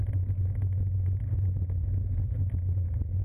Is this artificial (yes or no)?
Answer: no